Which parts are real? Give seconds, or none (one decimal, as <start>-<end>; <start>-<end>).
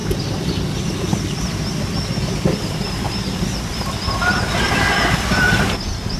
0.5-1.1; 4.8-6.2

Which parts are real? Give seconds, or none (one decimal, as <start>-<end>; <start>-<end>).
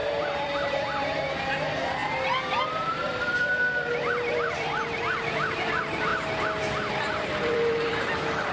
6.1-6.9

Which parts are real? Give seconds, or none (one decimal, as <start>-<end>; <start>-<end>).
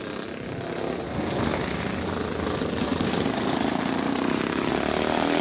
0.0-2.9; 4.7-5.4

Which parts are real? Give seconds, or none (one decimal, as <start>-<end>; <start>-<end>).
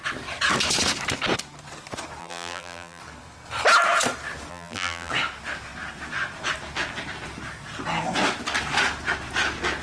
0.0-2.2; 3.0-4.5; 5.1-9.8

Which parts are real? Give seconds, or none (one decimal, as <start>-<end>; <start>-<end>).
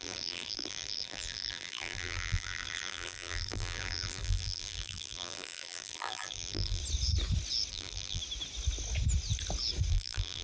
6.8-7.7; 8.2-9.9